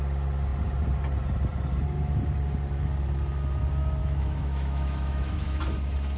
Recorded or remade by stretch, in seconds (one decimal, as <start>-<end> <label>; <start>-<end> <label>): 0.0-4.0 recorded; 4.0-5.6 remade; 5.6-6.2 recorded